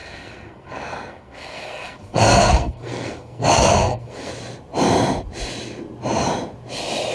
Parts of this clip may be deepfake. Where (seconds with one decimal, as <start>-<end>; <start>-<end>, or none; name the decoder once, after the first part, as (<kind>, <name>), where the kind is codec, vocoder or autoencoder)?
0.0-4.3 (codec, SNAC)